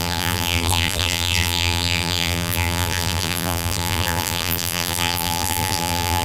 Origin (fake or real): fake